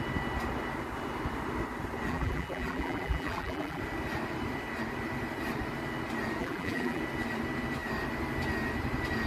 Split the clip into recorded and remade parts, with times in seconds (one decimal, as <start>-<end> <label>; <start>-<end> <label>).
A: 0.0-2.1 recorded; 2.1-3.8 remade; 3.8-6.4 recorded; 6.4-7.0 remade; 7.0-9.3 recorded